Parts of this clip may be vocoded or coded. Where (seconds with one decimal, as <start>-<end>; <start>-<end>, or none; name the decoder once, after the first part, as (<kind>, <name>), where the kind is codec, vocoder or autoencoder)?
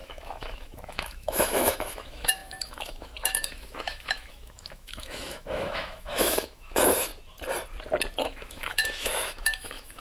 0.0-7.1 (autoencoder, DAC-VAE); 8.2-10.0